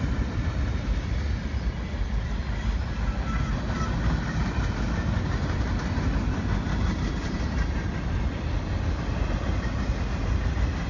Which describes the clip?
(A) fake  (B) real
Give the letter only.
B